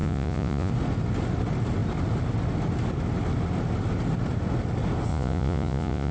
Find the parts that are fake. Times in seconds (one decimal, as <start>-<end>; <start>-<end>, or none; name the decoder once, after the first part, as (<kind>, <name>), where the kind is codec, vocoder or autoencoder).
0.0-0.7 (vocoder, Vocos); 5.1-6.1